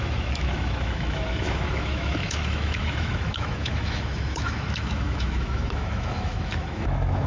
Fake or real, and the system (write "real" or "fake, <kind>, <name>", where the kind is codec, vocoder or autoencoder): fake, autoencoder, DAC-VAE